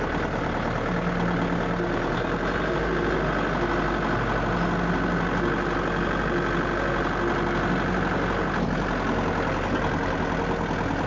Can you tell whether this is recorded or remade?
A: recorded